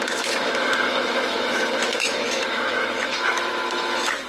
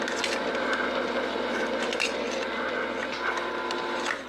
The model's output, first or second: first